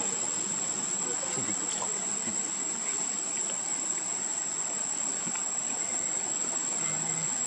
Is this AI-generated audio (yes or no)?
no